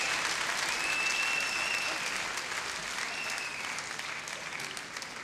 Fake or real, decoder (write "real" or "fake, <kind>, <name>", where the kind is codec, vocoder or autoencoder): real